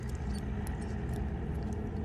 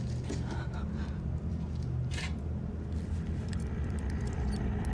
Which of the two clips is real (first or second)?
first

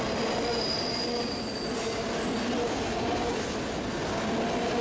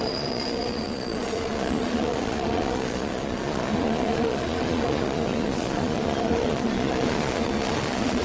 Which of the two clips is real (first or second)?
first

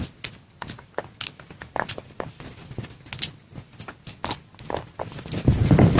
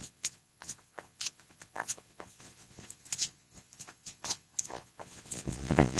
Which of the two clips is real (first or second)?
first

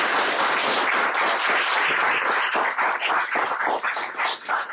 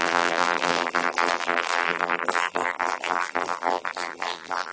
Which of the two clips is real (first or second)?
first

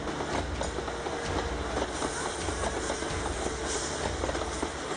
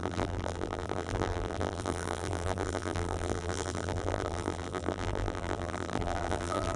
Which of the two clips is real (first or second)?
first